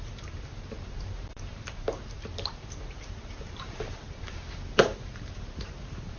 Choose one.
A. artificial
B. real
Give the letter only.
A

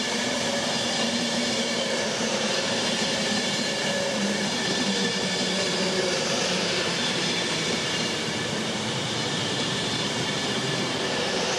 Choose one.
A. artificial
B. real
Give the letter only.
A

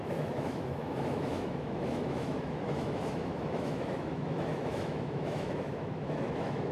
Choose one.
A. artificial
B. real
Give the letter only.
A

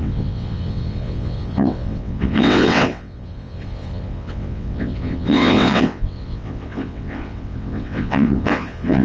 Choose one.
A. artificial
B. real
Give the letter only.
A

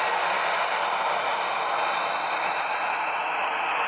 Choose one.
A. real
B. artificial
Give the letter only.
A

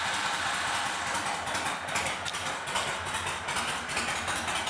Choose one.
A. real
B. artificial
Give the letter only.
A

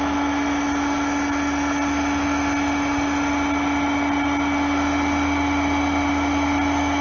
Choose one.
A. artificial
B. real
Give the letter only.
B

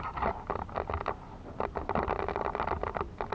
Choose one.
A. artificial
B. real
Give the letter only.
B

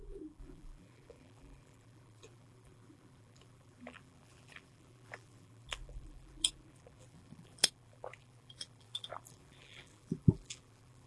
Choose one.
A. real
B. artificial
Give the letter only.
B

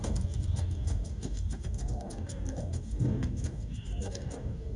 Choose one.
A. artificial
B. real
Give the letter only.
A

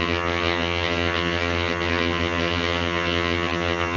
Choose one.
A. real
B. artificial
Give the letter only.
B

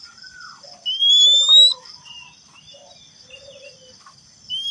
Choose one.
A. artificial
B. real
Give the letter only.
B